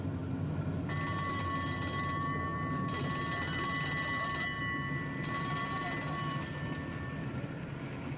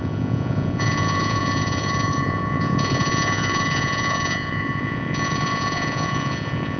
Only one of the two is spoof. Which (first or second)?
second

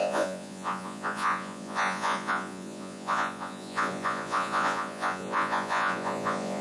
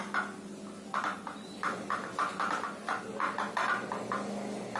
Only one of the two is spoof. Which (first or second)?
first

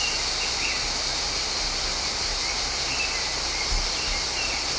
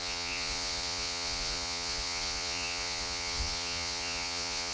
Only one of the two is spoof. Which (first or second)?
second